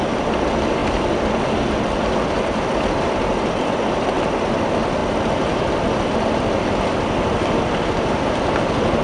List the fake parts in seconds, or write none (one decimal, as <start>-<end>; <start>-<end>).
0.8-3.8